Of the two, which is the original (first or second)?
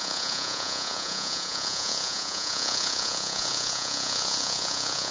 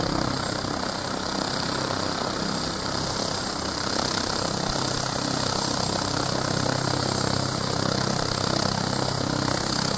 second